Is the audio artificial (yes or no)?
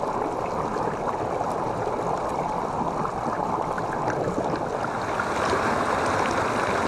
no